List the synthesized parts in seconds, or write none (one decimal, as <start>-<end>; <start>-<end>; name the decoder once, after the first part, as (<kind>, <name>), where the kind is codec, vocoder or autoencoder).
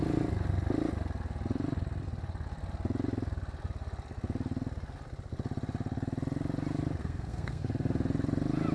7.0-7.6 (codec, SNAC)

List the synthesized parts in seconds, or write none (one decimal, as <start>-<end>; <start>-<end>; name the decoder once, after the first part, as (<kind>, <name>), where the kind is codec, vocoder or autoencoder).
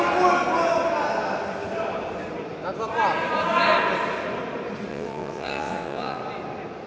4.9-6.2 (vocoder, WaveNeXt)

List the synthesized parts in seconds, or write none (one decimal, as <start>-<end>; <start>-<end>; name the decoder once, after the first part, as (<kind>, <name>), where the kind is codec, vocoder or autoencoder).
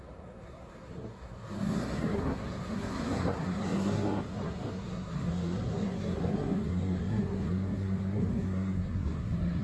0.0-9.6 (codec, SNAC)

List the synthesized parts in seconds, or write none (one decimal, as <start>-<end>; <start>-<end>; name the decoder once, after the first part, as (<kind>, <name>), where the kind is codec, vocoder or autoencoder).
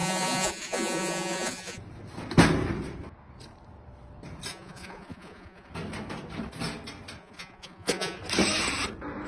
0.0-1.8 (vocoder, Vocos); 4.5-5.7; 7.2-8.2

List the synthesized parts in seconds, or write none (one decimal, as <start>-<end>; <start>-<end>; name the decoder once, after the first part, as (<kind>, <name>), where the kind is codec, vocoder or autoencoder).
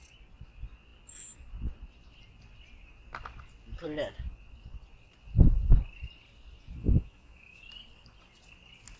6.8-7.6 (autoencoder, DAC-VAE)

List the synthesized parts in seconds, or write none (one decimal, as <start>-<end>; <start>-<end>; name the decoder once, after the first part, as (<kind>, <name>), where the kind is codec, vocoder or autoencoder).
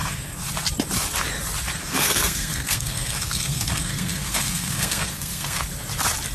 0.0-0.5 (codec, SNAC); 1.8-5.6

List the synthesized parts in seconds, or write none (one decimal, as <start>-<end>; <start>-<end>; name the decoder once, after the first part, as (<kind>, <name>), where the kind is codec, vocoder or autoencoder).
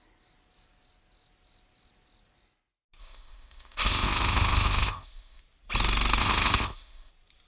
3.0-5.4 (codec, ZipCodec); 6.2-7.1